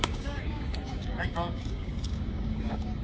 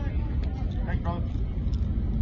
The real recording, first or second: second